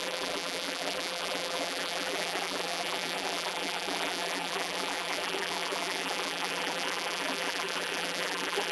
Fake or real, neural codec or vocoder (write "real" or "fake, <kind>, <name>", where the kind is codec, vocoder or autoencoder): fake, vocoder, BigVGAN v2